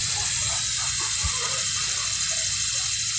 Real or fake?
real